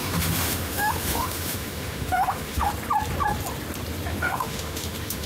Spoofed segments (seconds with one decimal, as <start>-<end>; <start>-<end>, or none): 0.0-2.7; 4.1-5.3